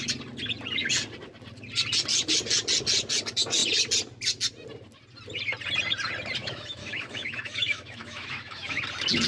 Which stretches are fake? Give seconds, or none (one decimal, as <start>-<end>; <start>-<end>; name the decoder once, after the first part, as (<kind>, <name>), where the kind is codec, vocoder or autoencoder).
6.4-8.8 (autoencoder, DAC-VAE)